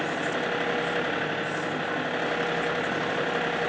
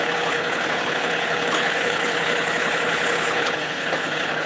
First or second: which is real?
first